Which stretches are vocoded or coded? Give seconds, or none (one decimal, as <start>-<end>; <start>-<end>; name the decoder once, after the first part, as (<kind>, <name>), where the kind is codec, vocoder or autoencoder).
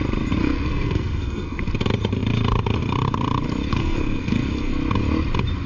0.4-1.6 (codec, SNAC); 3.7-4.7